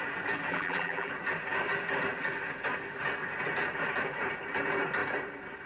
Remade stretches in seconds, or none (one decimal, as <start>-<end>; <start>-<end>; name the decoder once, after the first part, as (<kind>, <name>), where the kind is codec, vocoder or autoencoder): 0.5-1.1 (vocoder, BigVGAN v2)